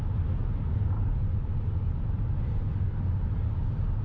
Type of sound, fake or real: real